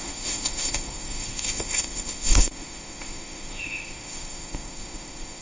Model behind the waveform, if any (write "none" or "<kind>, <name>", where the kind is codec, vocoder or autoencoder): autoencoder, DAC-VAE